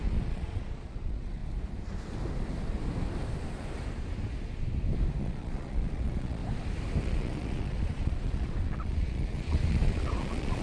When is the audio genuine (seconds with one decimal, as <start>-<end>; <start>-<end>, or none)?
1.4-5.2; 6.4-7.0

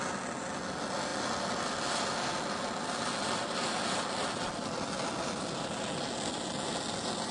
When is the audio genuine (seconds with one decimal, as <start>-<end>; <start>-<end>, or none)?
0.0-7.3

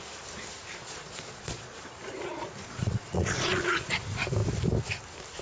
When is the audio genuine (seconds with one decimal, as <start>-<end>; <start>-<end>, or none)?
0.0-0.8; 4.0-5.4

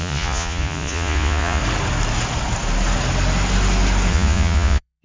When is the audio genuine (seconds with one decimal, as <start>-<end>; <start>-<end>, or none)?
1.6-4.1